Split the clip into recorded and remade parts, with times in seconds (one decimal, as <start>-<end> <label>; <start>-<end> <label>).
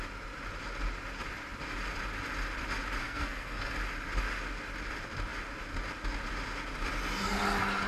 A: 0.0-3.0 recorded; 3.0-3.7 remade; 3.7-7.9 recorded